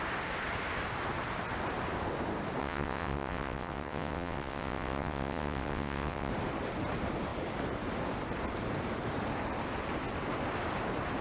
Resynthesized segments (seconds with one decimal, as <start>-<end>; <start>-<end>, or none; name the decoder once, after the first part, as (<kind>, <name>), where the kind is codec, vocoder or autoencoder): 2.6-6.3 (vocoder, WaveNeXt)